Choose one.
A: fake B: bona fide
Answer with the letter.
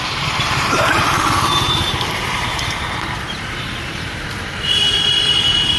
A